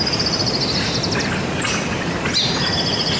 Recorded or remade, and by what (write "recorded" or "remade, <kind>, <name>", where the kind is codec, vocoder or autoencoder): recorded